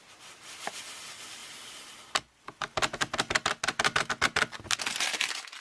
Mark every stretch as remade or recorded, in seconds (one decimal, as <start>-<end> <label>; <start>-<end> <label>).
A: 0.0-5.6 recorded

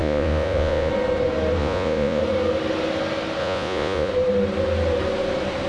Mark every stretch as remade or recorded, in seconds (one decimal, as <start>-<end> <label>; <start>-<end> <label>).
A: 0.0-0.9 remade; 0.9-1.6 recorded; 1.6-2.2 remade; 2.2-3.4 recorded; 3.4-4.1 remade; 4.1-5.7 recorded

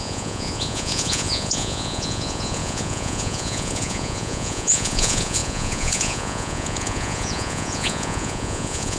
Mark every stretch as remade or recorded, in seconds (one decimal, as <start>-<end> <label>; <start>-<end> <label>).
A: 0.0-9.0 remade

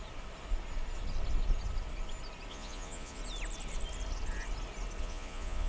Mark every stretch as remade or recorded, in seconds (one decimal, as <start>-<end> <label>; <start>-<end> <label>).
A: 0.0-2.5 recorded; 2.5-3.2 remade; 3.2-5.0 recorded; 5.0-5.7 remade

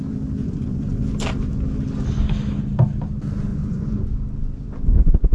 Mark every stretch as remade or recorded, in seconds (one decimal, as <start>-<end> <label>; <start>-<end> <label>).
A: 0.0-0.4 recorded; 0.4-1.0 remade; 1.0-3.5 recorded; 3.5-4.0 remade; 4.0-5.3 recorded

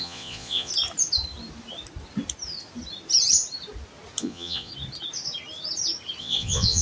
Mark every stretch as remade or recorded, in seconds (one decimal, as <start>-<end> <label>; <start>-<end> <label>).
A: 0.0-0.7 remade; 0.7-4.2 recorded; 4.2-4.7 remade; 4.7-6.2 recorded; 6.2-6.8 remade